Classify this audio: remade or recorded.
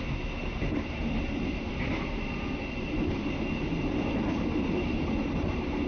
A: recorded